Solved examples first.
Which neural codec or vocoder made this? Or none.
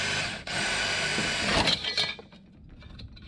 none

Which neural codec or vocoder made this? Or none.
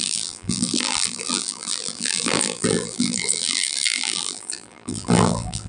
vocoder, BigVGAN v2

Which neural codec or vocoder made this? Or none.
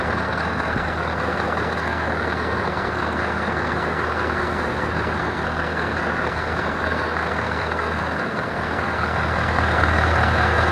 codec, SNAC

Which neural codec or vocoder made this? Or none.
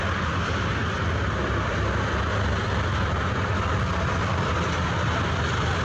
vocoder, BigVGAN v2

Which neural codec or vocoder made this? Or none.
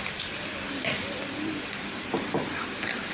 none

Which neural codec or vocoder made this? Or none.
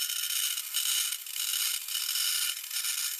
none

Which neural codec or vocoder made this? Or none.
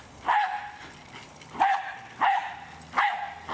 none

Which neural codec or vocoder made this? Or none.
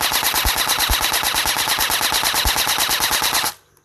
none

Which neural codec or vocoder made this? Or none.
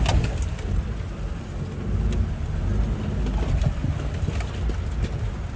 none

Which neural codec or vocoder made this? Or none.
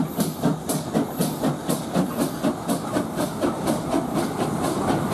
none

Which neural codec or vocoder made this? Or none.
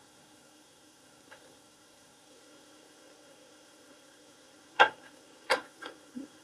codec, SNAC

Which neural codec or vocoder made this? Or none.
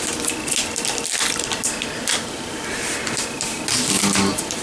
none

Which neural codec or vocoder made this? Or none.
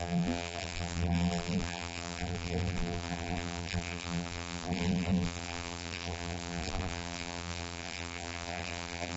vocoder, BigVGAN v2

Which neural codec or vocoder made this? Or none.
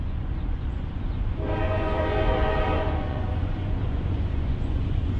vocoder, Vocos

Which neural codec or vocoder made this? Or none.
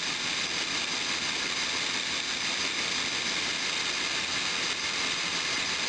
none